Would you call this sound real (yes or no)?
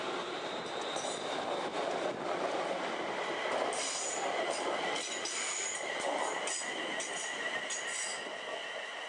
yes